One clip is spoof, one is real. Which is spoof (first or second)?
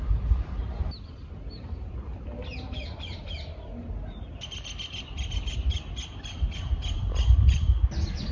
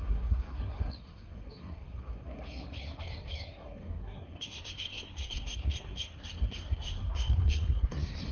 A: second